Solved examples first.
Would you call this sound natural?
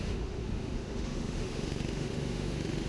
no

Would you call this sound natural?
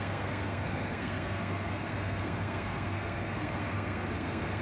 no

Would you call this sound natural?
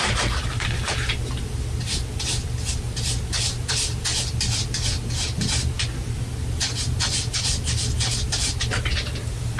yes